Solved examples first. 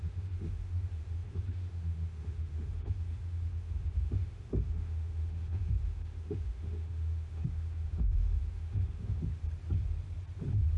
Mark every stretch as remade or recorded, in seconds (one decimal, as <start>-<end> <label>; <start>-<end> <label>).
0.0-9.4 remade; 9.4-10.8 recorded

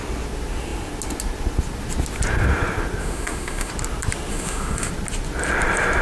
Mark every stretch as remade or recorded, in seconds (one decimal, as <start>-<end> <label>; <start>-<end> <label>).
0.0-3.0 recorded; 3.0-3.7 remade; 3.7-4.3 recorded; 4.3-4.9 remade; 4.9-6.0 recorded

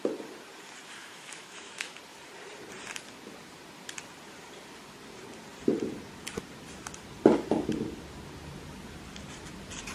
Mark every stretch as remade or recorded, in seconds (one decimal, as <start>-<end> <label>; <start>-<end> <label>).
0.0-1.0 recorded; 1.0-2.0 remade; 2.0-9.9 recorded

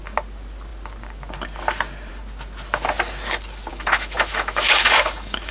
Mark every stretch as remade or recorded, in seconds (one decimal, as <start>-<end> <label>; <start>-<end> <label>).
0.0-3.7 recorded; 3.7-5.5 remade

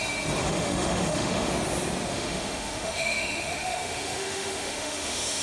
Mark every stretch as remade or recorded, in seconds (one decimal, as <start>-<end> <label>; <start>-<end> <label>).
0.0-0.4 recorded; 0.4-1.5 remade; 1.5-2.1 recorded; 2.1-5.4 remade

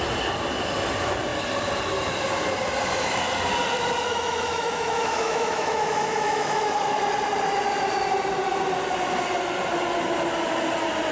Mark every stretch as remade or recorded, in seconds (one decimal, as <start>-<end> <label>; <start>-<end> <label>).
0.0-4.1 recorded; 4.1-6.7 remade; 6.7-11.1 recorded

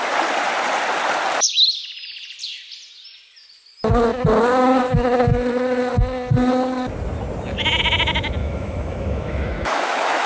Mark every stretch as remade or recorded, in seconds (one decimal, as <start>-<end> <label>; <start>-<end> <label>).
0.0-8.4 recorded; 8.4-10.3 remade